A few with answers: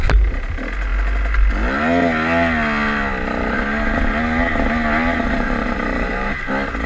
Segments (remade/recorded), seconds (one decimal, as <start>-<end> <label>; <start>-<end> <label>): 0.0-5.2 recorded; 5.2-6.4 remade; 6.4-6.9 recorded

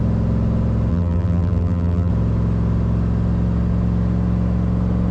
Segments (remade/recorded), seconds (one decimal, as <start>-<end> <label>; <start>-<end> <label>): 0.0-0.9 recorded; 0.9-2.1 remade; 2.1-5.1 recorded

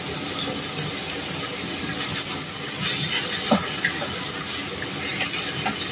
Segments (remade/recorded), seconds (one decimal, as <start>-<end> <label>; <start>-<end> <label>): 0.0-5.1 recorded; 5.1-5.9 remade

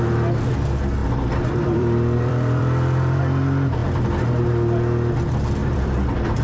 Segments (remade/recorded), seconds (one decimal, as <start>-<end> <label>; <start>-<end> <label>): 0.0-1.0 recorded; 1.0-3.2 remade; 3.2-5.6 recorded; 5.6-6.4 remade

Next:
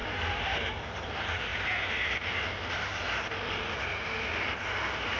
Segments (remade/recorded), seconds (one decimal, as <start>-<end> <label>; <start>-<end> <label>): 0.0-5.2 recorded

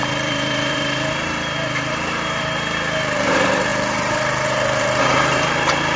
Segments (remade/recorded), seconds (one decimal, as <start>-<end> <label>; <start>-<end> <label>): 0.0-6.0 remade

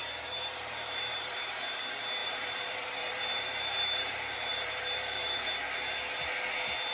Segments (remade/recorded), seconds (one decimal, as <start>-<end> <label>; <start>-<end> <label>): 0.0-1.8 remade; 1.8-2.2 recorded; 2.2-5.5 remade; 5.5-6.9 recorded

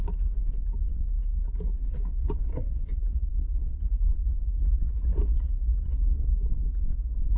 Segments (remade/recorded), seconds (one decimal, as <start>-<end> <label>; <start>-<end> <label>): 0.0-2.2 recorded; 2.2-3.3 remade; 3.3-4.1 recorded; 4.1-6.3 remade; 6.3-7.4 recorded